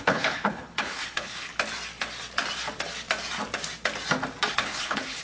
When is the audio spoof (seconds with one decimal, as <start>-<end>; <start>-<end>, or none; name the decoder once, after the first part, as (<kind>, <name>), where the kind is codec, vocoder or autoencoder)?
0.0-1.5 (codec, HILCodec); 4.5-5.2